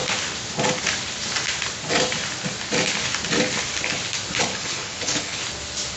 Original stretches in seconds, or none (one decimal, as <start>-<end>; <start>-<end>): 0.0-4.5; 5.4-6.0

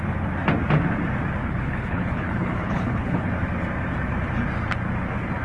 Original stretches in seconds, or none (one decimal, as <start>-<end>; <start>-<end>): 0.0-1.4; 3.3-5.4

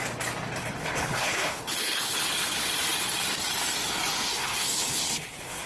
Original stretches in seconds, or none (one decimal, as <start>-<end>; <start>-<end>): 0.0-0.6; 2.2-4.3

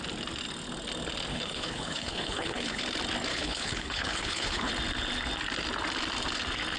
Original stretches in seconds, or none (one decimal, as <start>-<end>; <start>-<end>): 0.0-1.3; 2.8-3.3; 4.7-6.8

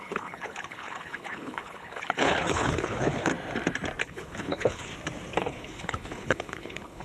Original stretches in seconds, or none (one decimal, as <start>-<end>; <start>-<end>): 3.3-4.0; 4.9-5.4

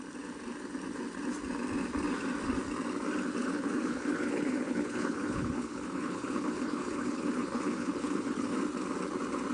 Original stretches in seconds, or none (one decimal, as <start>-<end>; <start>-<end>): 0.0-3.4; 8.6-9.5

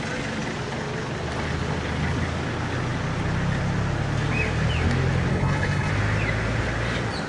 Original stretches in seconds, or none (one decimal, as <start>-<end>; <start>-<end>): 0.0-5.3; 5.9-7.3

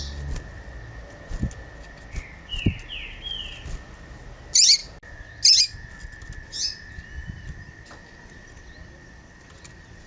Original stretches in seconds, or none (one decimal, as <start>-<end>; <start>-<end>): 0.0-10.1